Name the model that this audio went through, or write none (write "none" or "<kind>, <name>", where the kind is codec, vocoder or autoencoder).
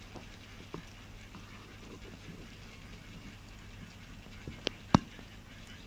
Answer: none